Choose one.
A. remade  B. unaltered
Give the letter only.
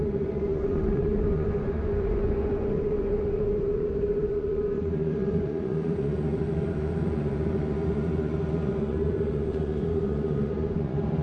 A